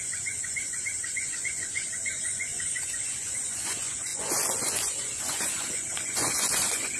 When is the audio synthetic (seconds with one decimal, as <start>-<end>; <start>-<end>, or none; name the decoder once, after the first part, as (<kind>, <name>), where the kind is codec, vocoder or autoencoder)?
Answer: 0.0-7.0 (vocoder, Vocos)